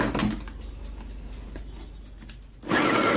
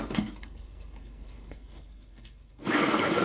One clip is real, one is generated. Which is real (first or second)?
first